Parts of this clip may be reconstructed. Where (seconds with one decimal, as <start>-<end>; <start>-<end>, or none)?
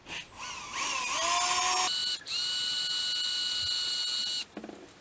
none